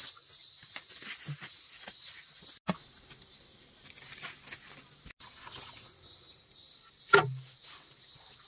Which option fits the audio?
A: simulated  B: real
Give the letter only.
B